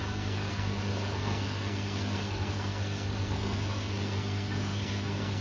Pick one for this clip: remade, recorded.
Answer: remade